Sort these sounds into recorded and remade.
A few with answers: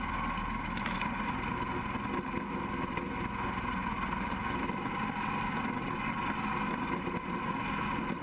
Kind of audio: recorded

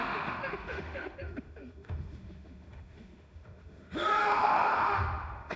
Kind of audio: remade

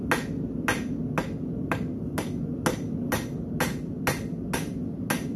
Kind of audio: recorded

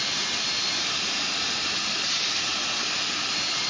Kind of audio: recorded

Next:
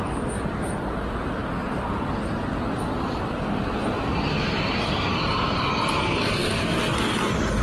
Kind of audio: recorded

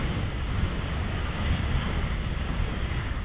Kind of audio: remade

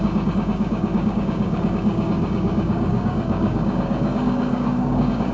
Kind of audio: remade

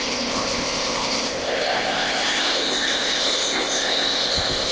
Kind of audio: remade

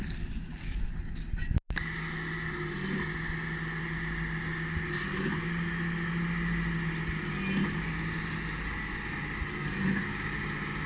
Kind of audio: recorded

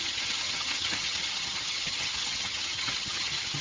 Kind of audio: remade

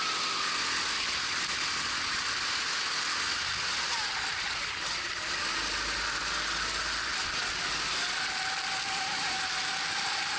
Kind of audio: recorded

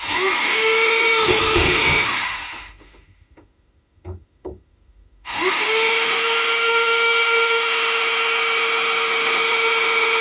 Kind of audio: remade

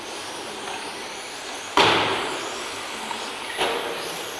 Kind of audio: recorded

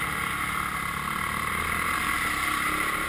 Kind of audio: recorded